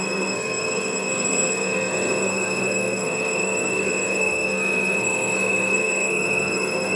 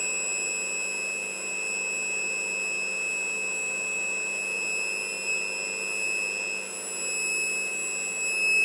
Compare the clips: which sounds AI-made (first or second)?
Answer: first